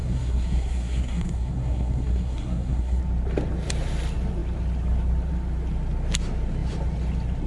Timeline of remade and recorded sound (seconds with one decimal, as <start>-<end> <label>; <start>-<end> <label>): 0.0-3.0 remade; 3.0-7.5 recorded